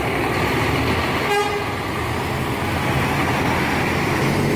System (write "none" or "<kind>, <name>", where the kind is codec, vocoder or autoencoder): none